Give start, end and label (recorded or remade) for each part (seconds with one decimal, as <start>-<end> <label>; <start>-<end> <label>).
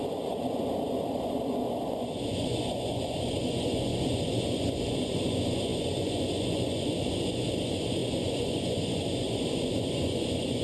0.0-10.6 remade